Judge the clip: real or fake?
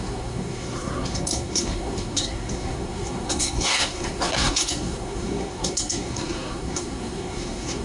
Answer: fake